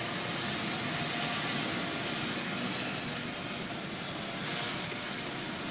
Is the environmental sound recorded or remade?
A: recorded